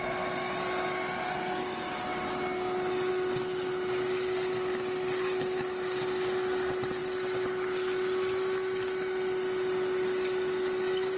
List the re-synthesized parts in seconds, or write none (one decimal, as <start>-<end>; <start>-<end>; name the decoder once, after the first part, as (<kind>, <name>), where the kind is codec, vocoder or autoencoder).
none